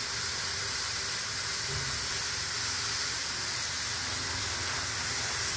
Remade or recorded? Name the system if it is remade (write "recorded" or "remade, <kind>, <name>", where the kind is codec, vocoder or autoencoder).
remade, vocoder, BigVGAN v2